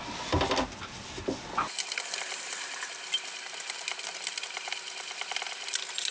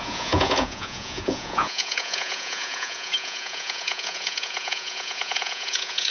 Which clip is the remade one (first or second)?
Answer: second